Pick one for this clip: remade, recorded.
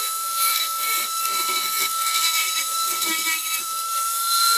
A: remade